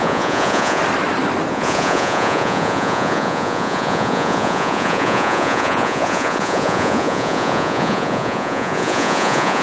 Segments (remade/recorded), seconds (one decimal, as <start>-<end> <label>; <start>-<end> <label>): 0.0-0.8 remade; 0.8-1.5 recorded; 1.5-9.6 remade